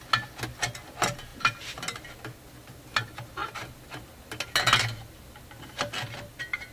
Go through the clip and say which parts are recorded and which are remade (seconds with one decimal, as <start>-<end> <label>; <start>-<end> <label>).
0.0-6.7 recorded